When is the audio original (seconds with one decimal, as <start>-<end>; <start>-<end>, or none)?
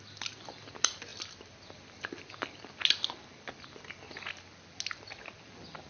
0.0-5.9